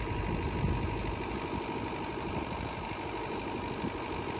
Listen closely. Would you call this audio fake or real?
real